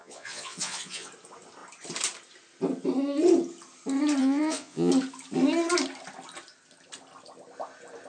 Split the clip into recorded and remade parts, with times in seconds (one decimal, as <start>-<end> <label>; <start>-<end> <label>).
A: 0.0-1.1 remade; 1.1-4.2 recorded; 4.2-4.9 remade; 4.9-8.1 recorded